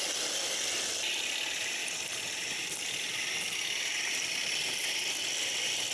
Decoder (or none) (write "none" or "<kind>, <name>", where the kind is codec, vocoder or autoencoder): none